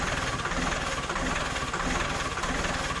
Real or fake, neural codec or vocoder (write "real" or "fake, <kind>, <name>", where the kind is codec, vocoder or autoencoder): real